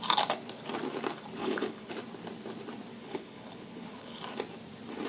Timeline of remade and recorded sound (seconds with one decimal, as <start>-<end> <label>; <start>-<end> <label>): 0.0-1.4 recorded; 1.4-1.9 remade; 1.9-3.0 recorded; 3.0-4.2 remade; 4.2-5.1 recorded